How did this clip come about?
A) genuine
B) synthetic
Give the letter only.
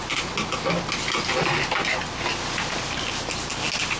A